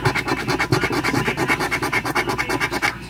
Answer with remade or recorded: recorded